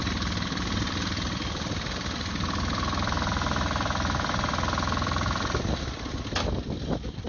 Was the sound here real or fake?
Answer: fake